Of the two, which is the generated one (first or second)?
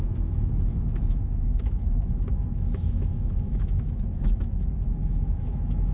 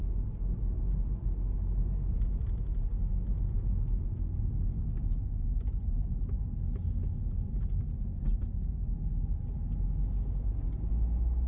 first